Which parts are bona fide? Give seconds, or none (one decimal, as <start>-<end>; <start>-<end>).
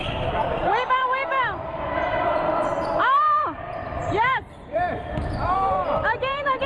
none